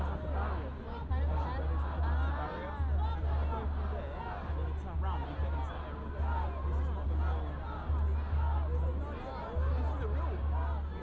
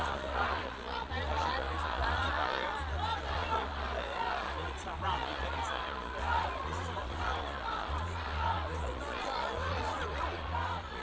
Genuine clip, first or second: first